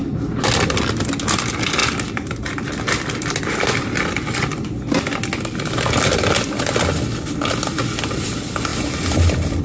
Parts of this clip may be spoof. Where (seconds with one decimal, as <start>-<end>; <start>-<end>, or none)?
none